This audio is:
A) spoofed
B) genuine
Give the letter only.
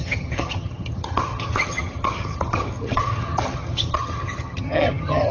A